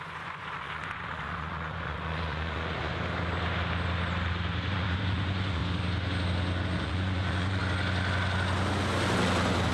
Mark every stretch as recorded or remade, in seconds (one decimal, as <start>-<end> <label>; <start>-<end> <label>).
0.0-2.9 remade; 2.9-4.7 recorded; 4.7-5.6 remade; 5.6-6.7 recorded; 6.7-7.6 remade; 7.6-9.7 recorded